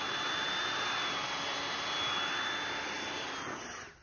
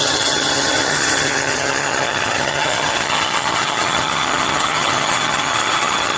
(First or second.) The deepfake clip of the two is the second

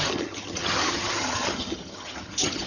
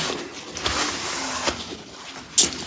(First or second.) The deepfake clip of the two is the first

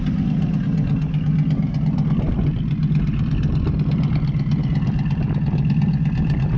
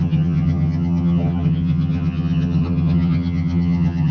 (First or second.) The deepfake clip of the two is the second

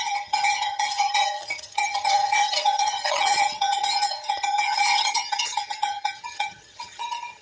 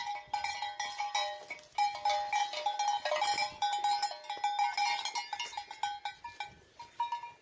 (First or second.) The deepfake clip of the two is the first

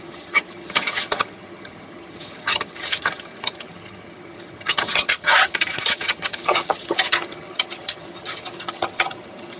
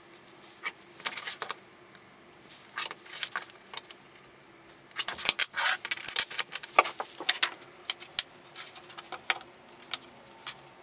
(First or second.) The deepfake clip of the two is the first